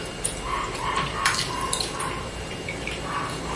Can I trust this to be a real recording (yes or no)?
no